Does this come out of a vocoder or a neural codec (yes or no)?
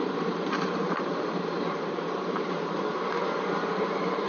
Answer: yes